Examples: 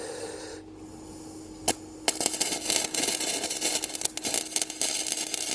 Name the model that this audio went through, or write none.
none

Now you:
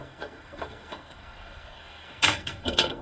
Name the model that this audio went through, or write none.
codec, SNAC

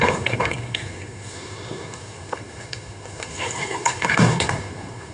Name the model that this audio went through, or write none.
codec, SNAC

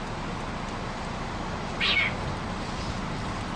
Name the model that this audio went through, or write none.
none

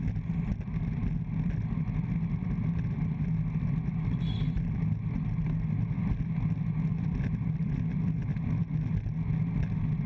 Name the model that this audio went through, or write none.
none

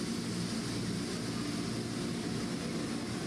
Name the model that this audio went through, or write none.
none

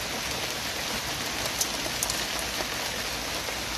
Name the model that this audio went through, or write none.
none